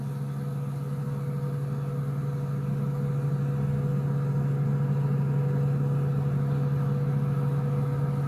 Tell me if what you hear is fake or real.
real